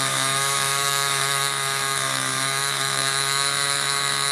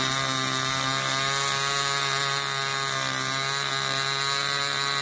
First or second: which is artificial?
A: first